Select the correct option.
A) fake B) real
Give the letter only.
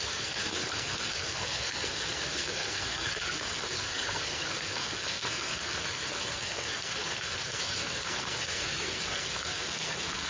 A